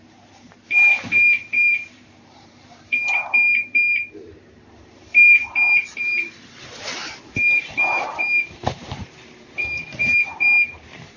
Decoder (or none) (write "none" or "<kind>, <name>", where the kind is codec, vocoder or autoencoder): vocoder, BigVGAN v2